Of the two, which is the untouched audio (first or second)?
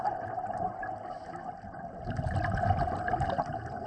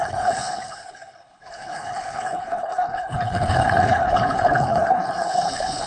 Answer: first